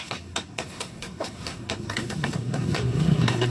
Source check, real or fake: fake